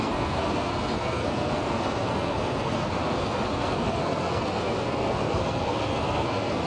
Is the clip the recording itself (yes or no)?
no